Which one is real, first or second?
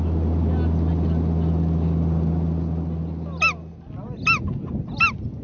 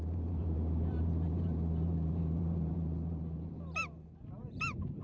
first